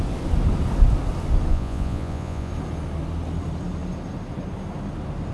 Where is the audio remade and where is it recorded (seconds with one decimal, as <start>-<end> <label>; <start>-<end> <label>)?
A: 0.0-1.5 recorded; 1.5-2.5 remade; 2.5-5.3 recorded